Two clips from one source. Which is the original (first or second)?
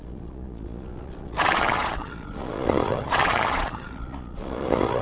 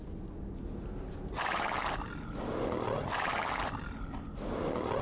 second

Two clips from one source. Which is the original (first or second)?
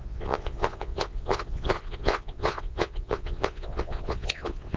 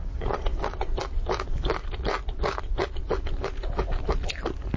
second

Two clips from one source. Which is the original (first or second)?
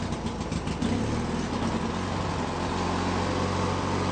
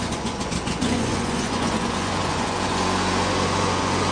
first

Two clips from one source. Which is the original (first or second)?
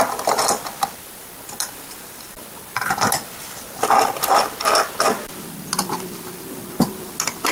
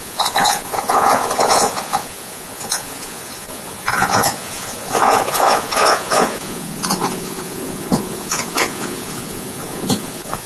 first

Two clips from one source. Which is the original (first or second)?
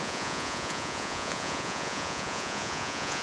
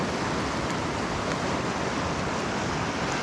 second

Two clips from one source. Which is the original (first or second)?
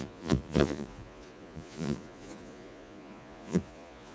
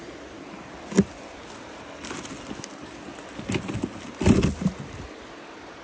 second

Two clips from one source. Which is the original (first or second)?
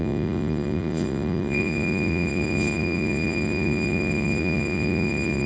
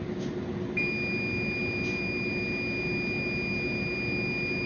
second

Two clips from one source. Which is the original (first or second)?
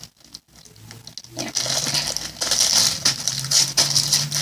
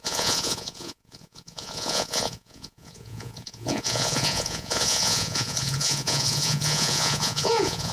first